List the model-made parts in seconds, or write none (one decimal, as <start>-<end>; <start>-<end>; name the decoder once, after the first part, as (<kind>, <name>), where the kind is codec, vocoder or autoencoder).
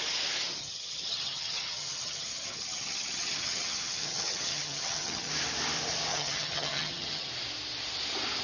0.6-5.3 (vocoder, HiFi-GAN); 6.1-7.3